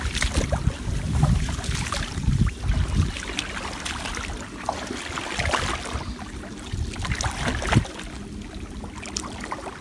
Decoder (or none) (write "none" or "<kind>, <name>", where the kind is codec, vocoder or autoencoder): none